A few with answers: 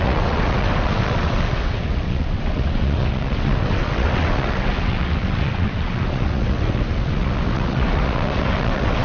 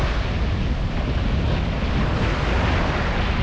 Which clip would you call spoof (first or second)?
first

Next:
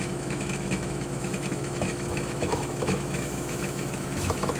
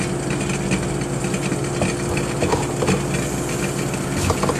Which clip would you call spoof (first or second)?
first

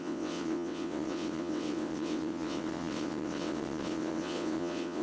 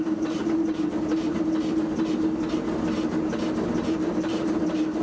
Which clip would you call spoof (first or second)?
first